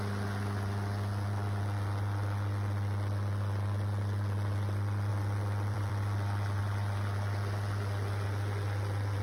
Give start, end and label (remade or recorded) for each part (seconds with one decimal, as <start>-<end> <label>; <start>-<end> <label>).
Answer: 0.0-5.1 recorded; 5.1-6.6 remade; 6.6-9.2 recorded

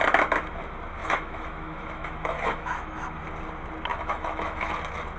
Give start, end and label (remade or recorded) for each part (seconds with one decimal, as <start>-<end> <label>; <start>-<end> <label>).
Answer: 0.0-1.0 recorded; 1.0-3.2 remade; 3.2-3.9 recorded; 3.9-4.7 remade; 4.7-5.2 recorded

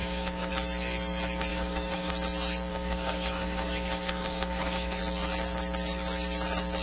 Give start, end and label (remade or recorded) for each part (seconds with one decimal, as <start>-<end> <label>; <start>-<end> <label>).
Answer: 0.0-0.5 remade; 0.5-1.5 recorded; 1.5-2.1 remade; 2.1-2.7 recorded; 2.7-5.0 remade; 5.0-6.8 recorded

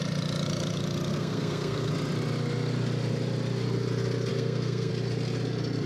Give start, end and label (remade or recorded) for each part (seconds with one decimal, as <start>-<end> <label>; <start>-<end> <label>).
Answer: 0.0-1.1 recorded; 1.1-1.9 remade; 1.9-4.3 recorded; 4.3-4.9 remade; 4.9-5.9 recorded

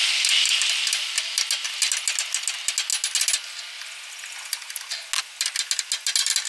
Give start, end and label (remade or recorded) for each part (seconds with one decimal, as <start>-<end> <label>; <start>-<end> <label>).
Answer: 0.0-6.5 recorded

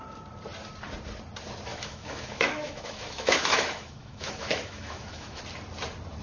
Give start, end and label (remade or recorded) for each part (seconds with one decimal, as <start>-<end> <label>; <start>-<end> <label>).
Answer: 0.0-1.7 recorded; 1.7-5.4 remade; 5.4-6.2 recorded

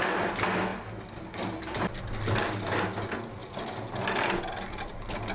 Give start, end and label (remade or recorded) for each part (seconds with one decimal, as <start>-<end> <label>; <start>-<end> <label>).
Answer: 0.0-5.3 recorded

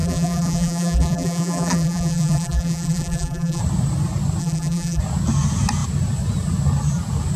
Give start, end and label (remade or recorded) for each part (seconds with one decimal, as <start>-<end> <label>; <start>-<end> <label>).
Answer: 0.0-3.6 remade; 3.6-4.4 recorded; 4.4-5.0 remade; 5.0-7.4 recorded